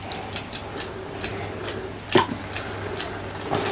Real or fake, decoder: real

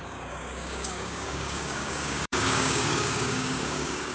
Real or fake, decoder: fake, codec, DAC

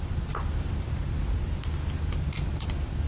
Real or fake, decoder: real